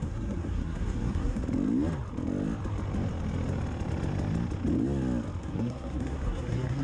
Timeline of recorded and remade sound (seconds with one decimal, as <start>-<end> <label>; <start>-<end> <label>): 0.0-1.4 remade; 1.4-5.4 recorded; 5.4-6.8 remade